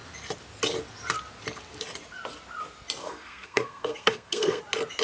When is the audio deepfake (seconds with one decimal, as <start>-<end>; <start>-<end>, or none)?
3.0-4.6

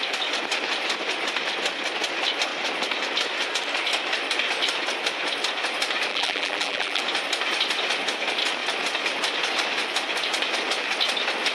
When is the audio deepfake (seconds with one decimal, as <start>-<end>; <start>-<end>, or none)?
6.1-7.0

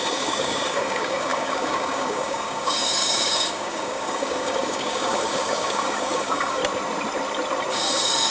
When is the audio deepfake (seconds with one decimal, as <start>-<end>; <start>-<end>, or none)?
0.0-6.6; 7.7-8.3

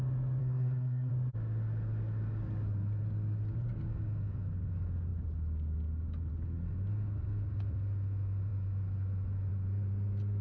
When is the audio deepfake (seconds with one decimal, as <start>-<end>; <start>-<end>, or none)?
0.4-1.1

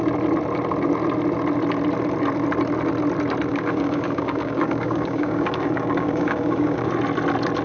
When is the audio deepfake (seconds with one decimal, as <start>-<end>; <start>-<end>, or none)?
3.5-6.9

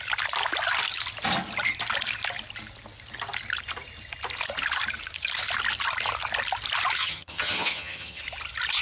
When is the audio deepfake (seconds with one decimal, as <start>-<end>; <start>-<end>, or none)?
7.0-8.2

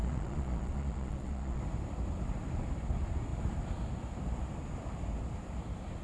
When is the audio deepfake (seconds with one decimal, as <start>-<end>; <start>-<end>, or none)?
0.0-1.6

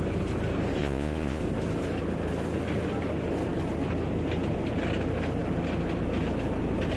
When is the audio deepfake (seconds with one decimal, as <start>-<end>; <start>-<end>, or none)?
0.8-1.4